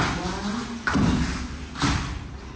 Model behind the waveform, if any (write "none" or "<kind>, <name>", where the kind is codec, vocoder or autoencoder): none